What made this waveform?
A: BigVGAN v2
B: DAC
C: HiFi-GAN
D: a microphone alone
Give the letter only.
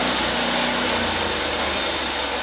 D